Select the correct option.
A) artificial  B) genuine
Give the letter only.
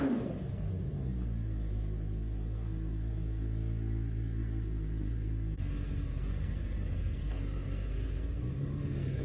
A